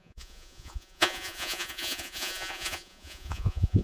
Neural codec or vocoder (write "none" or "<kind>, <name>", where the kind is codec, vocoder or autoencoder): vocoder, Vocos